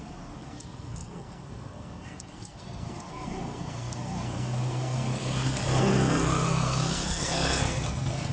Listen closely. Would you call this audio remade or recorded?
remade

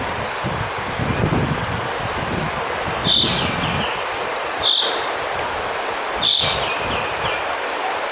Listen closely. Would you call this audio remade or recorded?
recorded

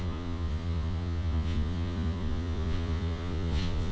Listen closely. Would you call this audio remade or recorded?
remade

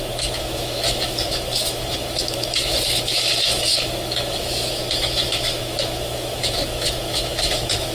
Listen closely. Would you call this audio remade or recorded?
remade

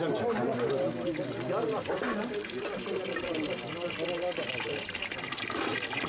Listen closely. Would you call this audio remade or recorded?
recorded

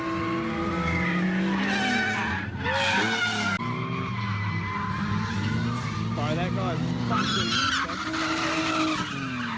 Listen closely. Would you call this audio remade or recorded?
recorded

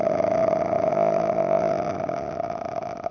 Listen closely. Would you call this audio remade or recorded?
recorded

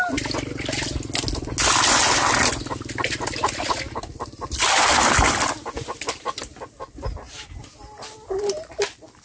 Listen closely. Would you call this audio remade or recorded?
recorded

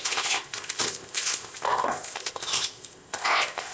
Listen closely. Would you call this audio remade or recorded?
remade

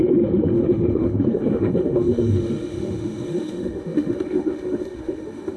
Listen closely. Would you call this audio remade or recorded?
remade